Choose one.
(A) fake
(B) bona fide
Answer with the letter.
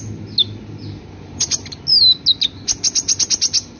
B